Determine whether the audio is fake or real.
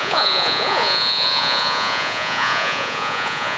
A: fake